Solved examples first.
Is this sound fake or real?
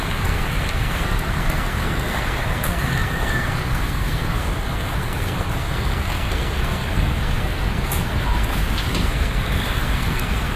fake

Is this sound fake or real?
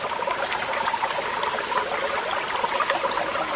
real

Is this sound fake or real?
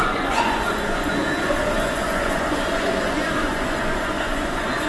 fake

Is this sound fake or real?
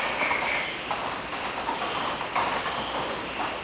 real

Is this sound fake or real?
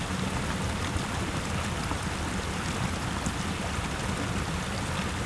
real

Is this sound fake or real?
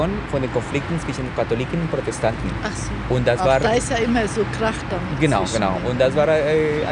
real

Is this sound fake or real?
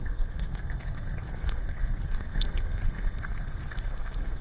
fake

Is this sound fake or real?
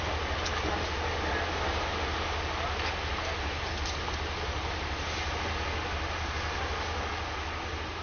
real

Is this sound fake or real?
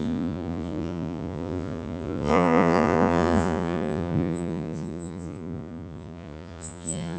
fake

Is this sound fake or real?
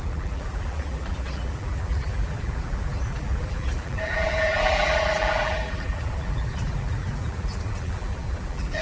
fake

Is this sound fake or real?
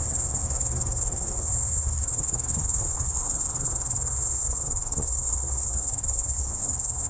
fake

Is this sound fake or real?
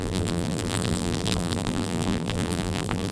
fake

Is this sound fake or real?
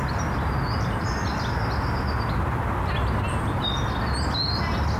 real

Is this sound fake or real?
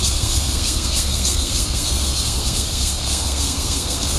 fake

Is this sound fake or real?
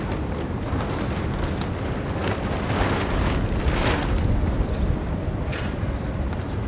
real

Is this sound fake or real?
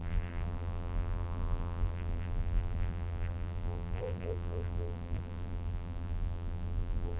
fake